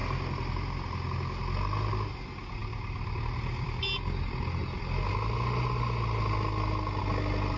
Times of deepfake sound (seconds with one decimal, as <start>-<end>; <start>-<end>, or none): none